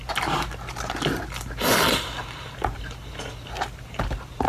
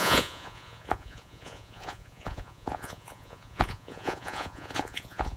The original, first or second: first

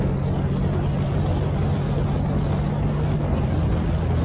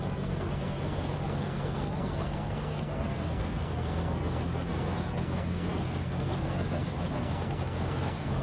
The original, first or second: first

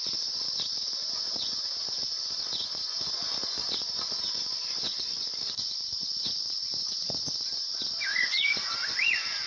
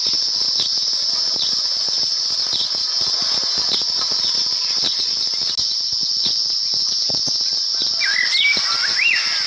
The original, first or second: second